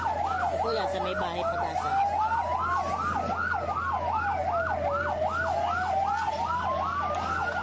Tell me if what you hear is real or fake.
real